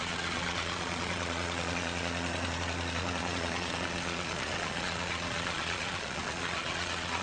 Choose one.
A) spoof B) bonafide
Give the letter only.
A